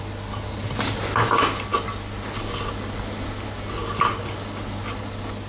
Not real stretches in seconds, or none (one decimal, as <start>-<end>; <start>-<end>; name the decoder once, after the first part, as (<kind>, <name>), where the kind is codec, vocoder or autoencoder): none

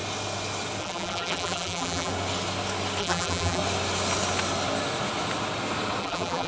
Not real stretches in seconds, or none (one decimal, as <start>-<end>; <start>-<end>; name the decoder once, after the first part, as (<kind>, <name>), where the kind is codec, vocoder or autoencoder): 0.8-2.1 (vocoder, BigVGAN v2); 3.0-3.6; 6.0-6.5

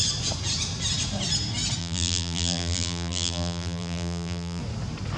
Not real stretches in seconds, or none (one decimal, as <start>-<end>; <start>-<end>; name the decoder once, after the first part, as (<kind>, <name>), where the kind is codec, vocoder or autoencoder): 1.8-4.6 (vocoder, BigVGAN v2)

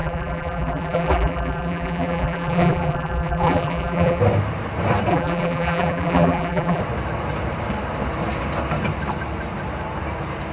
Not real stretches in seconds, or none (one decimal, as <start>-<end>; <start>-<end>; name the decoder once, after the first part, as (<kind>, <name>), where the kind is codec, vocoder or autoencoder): 0.0-4.2 (vocoder, BigVGAN v2); 5.1-6.8

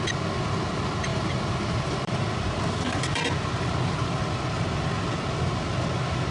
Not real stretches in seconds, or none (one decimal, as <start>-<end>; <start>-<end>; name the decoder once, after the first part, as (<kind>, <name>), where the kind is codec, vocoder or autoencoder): 1.1-4.4 (vocoder, BigVGAN v2)

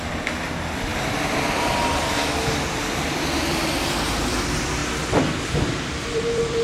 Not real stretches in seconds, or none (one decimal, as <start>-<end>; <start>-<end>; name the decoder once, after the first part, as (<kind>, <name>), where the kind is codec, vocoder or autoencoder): 0.0-6.6 (vocoder, BigVGAN v2)